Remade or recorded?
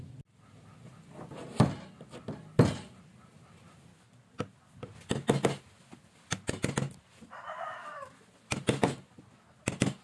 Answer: recorded